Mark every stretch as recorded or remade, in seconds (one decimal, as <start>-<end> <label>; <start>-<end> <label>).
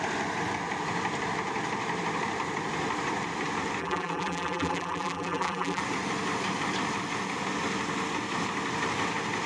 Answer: 0.0-3.8 recorded; 3.8-5.8 remade; 5.8-9.5 recorded